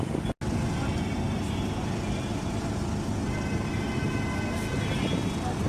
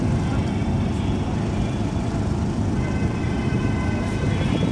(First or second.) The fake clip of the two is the second